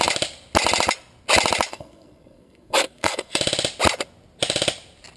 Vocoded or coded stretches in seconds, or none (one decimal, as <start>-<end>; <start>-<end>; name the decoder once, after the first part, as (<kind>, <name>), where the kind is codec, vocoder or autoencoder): 1.7-3.4 (codec, SNAC)